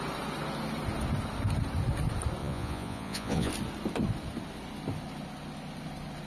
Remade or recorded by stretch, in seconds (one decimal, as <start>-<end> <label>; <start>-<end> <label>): 0.0-2.4 recorded; 2.4-3.5 remade; 3.5-6.3 recorded